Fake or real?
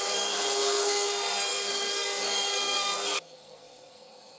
fake